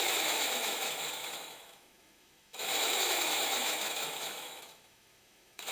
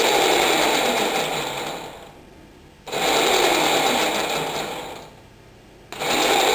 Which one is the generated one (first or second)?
first